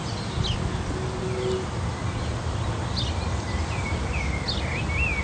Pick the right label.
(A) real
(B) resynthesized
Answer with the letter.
A